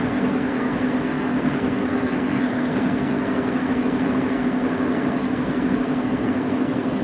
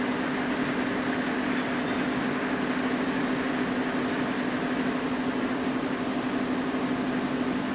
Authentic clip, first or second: second